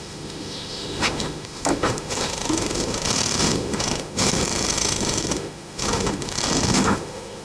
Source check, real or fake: fake